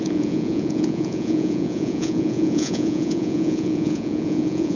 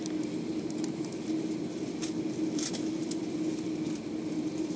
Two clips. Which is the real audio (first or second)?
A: second